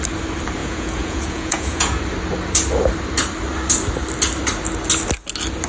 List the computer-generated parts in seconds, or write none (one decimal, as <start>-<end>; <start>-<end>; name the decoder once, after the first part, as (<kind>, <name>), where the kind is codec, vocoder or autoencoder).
0.6-2.0 (vocoder, Vocos)